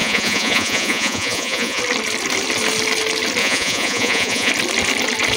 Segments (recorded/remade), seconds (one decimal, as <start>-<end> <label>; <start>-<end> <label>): 0.0-1.8 remade; 1.8-3.4 recorded; 3.4-4.5 remade; 4.5-5.4 recorded